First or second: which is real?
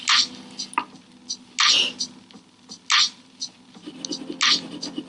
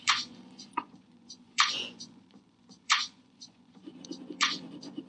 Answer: first